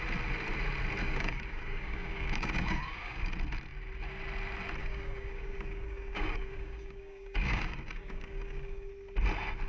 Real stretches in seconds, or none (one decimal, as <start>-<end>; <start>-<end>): 0.0-1.0; 3.3-4.8; 8.9-9.7